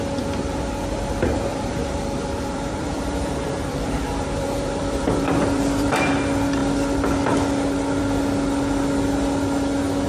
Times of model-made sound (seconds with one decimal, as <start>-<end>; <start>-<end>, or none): 1.5-6.1